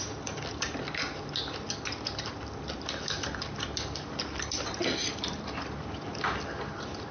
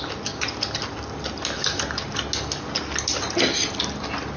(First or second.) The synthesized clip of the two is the first